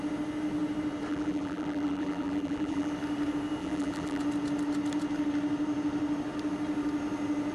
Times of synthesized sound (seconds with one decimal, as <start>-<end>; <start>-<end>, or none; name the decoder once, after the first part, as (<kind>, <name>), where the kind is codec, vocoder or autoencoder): 1.1-2.9 (vocoder, BigVGAN v2); 3.6-4.2